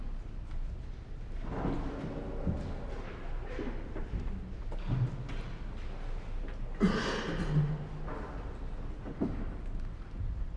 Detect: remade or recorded recorded